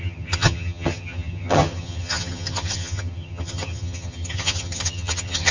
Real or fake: fake